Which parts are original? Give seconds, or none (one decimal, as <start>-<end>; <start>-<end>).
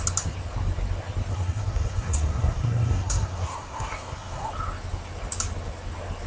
0.0-1.3; 4.5-6.3